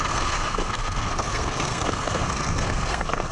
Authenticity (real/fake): fake